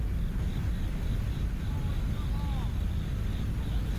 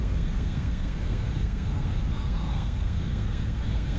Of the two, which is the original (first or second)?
first